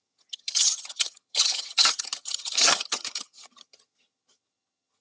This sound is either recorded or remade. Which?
remade